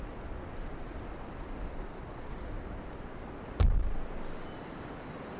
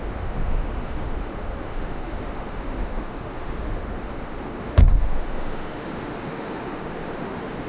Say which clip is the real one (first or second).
first